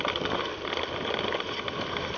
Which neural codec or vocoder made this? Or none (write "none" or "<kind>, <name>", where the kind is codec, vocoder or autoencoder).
none